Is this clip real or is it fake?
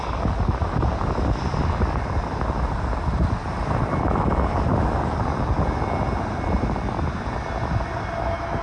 real